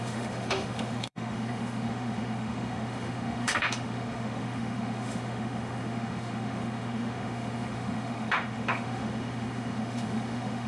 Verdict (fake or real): fake